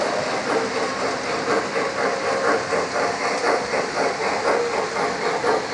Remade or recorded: recorded